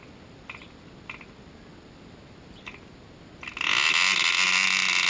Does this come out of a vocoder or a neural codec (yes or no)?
no